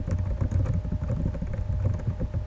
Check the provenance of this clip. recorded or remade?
recorded